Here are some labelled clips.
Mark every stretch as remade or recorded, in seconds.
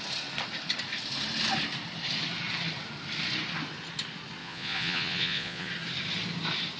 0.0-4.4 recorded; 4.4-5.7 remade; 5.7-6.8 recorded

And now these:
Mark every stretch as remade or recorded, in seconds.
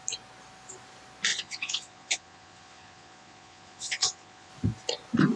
0.0-1.3 recorded; 1.3-4.5 remade; 4.5-5.4 recorded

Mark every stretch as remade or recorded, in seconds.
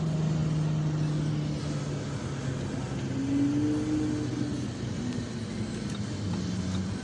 0.0-7.0 recorded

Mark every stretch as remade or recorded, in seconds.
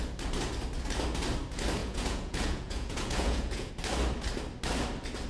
0.0-1.8 recorded; 1.8-3.7 remade; 3.7-5.3 recorded